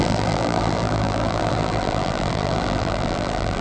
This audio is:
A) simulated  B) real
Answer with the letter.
A